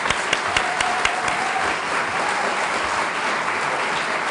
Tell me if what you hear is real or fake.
real